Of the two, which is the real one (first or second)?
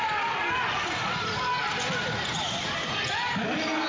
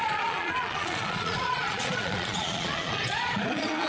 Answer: first